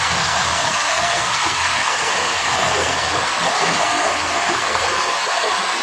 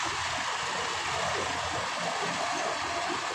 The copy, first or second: first